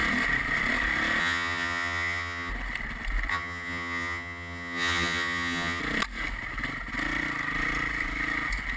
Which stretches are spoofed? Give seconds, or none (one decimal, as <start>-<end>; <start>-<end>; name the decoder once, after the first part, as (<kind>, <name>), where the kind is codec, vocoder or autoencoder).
1.2-2.5 (vocoder, HiFi-GAN); 3.3-5.8